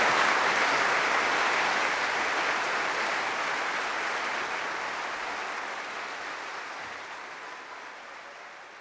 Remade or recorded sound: recorded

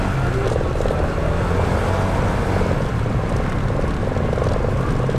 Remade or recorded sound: recorded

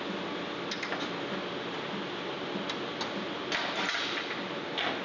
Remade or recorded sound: recorded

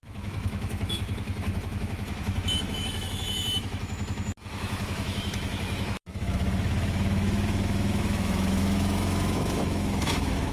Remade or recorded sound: remade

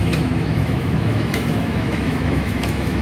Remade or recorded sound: remade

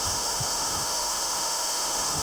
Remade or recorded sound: remade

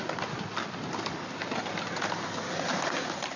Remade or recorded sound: recorded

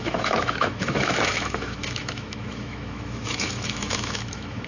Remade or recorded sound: remade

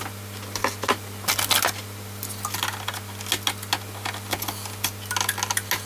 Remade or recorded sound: recorded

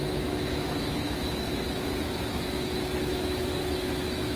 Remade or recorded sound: remade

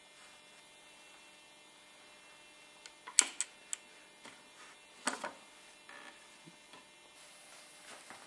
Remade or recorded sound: recorded